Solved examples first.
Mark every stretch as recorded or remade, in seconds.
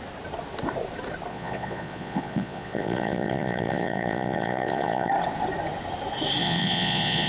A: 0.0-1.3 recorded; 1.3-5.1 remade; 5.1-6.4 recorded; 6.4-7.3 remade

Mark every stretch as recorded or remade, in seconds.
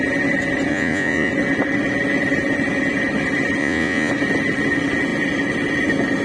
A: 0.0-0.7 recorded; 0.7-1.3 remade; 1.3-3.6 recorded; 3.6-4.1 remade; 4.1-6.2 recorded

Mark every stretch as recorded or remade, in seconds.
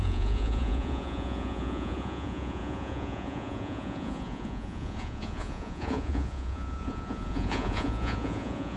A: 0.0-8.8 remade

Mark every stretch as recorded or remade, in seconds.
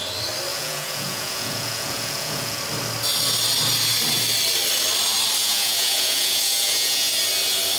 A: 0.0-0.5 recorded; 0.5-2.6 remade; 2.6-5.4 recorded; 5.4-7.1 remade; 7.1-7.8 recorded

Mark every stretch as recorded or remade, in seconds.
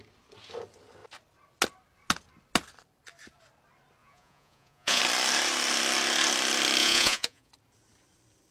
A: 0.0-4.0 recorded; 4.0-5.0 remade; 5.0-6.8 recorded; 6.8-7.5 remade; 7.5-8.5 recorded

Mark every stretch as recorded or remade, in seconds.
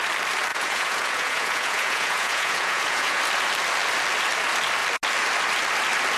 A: 0.0-0.5 recorded; 0.5-3.2 remade; 3.2-6.2 recorded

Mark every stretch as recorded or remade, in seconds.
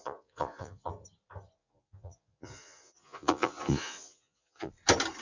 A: 0.0-0.9 remade; 0.9-1.6 recorded; 1.6-4.7 remade; 4.7-5.2 recorded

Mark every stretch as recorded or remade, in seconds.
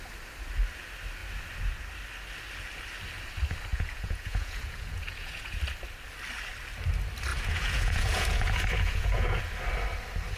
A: 0.0-3.7 recorded; 3.7-5.6 remade; 5.6-7.3 recorded; 7.3-9.4 remade; 9.4-10.4 recorded